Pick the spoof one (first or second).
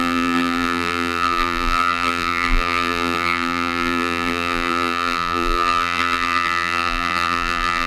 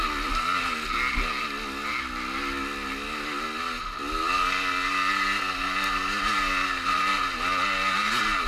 first